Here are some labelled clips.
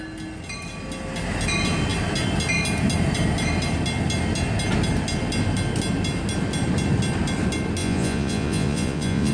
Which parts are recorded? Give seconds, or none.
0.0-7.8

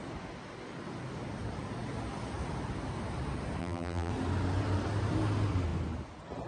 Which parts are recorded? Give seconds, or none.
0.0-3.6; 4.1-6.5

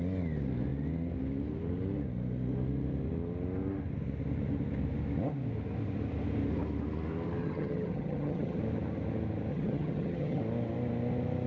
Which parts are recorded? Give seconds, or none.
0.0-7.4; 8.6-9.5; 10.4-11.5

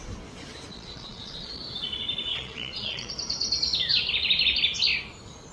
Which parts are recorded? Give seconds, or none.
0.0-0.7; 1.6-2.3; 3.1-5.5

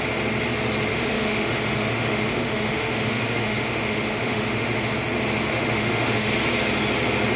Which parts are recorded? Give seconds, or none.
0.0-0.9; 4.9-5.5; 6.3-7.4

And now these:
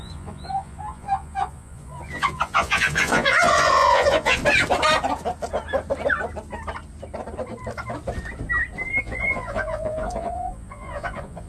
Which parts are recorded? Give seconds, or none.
4.4-9.0

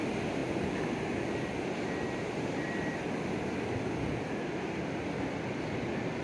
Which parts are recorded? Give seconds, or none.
0.0-6.2